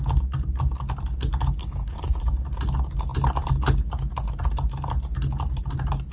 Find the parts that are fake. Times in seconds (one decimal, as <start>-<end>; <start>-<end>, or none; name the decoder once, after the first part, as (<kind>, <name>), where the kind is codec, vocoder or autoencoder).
1.6-2.2 (codec, HILCodec)